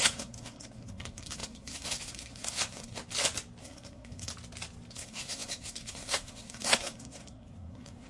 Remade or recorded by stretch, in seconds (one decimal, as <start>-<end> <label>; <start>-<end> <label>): 0.0-3.0 remade; 3.0-3.6 recorded; 3.6-4.3 remade; 4.3-4.9 recorded; 4.9-8.1 remade